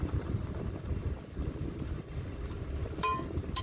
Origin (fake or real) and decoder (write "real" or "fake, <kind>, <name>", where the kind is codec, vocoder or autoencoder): fake, vocoder, BigVGAN v2